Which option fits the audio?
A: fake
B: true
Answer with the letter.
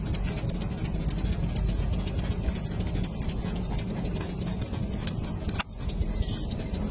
B